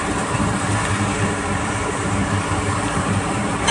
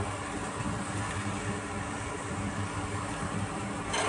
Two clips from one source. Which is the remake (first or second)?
first